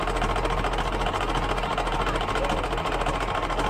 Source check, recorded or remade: recorded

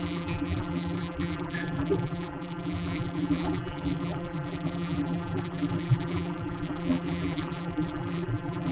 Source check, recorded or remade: remade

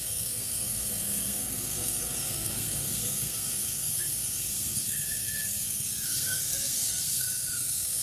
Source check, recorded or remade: remade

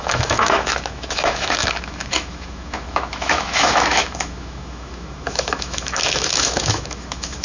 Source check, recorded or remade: remade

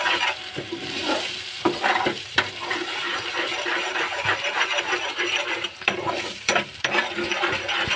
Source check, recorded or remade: remade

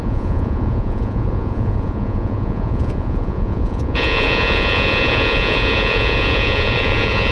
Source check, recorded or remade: remade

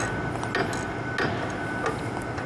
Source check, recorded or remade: recorded